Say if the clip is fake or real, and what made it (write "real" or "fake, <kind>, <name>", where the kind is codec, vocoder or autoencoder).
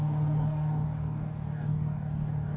fake, codec, DAC